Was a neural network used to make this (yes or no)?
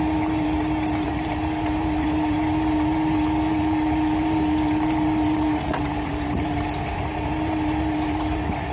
yes